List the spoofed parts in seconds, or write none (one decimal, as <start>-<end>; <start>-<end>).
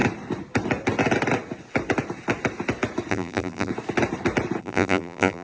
3.1-3.7; 4.6-5.4